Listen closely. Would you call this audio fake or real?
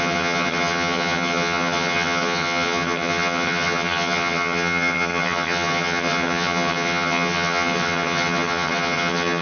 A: fake